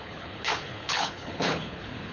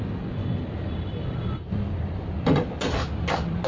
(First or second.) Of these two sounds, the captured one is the second